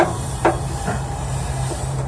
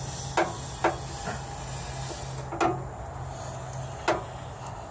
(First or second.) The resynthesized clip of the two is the first